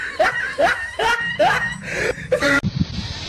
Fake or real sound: fake